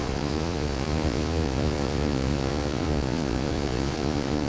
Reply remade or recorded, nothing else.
remade